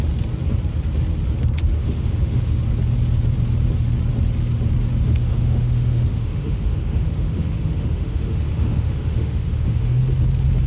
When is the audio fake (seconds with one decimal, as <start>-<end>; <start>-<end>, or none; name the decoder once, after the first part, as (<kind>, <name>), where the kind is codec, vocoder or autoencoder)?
1.6-2.6 (autoencoder, DAC-VAE); 5.1-10.0